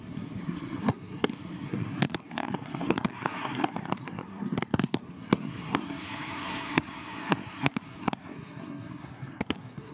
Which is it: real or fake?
fake